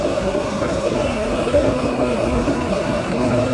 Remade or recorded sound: remade